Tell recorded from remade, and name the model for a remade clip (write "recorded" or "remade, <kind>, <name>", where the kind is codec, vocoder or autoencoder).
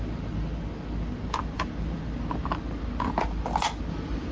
recorded